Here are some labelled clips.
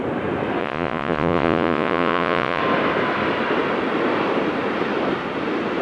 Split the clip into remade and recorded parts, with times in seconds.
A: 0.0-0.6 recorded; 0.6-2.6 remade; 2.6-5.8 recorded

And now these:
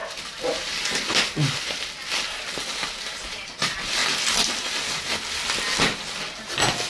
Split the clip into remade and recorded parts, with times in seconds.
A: 0.0-0.7 remade; 0.7-6.9 recorded

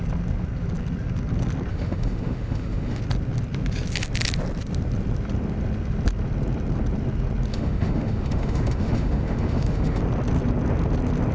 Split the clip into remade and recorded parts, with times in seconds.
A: 0.0-1.7 recorded; 1.7-3.0 remade; 3.0-7.5 recorded; 7.5-10.0 remade; 10.0-11.3 recorded

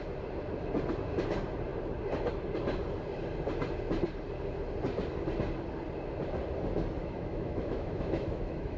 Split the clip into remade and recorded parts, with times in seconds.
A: 0.0-7.0 recorded; 7.0-8.8 remade

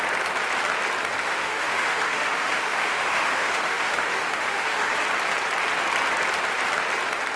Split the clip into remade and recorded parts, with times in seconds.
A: 0.0-1.2 recorded; 1.2-4.9 remade; 4.9-7.4 recorded

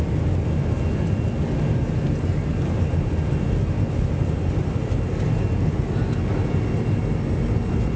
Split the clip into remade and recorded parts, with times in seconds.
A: 0.0-2.5 recorded; 2.5-3.1 remade; 3.1-8.0 recorded

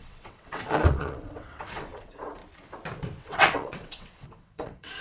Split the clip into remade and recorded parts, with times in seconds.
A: 0.0-2.4 remade; 2.4-3.2 recorded; 3.2-5.0 remade